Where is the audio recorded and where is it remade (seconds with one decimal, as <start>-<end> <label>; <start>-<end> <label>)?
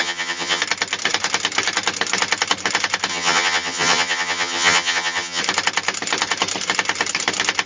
0.0-0.6 remade; 0.6-3.1 recorded; 3.1-5.4 remade; 5.4-7.7 recorded